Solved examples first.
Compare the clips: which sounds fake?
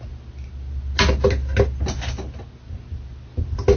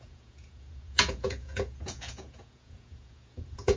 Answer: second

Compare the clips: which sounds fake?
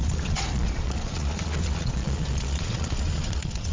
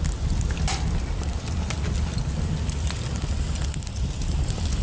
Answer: first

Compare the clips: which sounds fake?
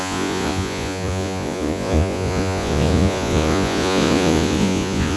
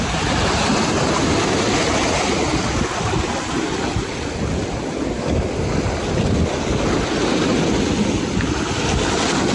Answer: first